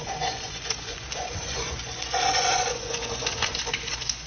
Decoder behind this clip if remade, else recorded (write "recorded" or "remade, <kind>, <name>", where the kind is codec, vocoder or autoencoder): remade, vocoder, Vocos